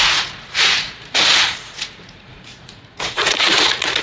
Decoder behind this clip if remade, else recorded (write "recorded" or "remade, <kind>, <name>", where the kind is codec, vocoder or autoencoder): remade, vocoder, Vocos